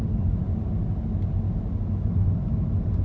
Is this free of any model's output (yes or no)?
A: yes